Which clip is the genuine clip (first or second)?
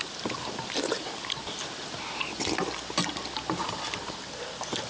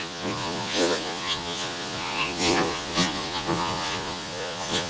first